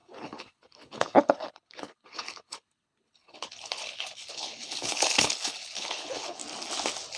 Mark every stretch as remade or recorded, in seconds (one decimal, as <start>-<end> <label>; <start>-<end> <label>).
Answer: 0.0-6.4 remade; 6.4-7.2 recorded